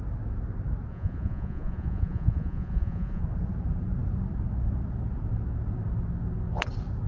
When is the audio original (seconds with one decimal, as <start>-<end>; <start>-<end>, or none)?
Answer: 0.0-0.9; 3.2-7.1